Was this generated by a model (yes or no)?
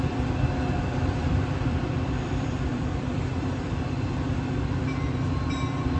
yes